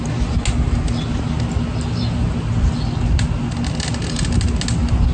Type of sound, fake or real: real